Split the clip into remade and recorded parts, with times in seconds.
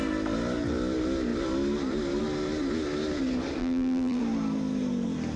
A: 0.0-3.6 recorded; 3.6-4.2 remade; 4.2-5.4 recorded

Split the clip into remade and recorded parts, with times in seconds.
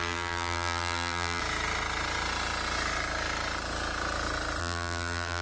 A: 0.0-1.4 remade; 1.4-4.6 recorded; 4.6-5.4 remade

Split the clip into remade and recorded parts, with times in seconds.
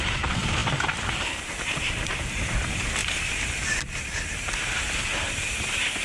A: 0.0-6.0 recorded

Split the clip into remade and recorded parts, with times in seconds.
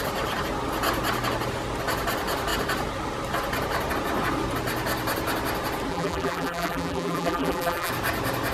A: 0.0-5.9 recorded; 5.9-7.9 remade; 7.9-8.5 recorded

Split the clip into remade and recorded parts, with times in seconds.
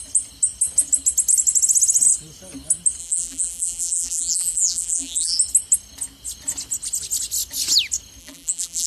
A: 0.0-3.0 recorded; 3.0-5.4 remade; 5.4-8.2 recorded; 8.2-8.9 remade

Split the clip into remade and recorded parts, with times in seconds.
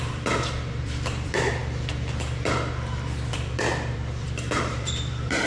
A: 0.0-1.6 remade; 1.6-3.3 recorded; 3.3-5.5 remade